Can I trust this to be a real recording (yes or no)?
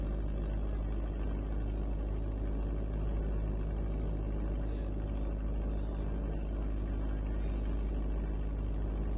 yes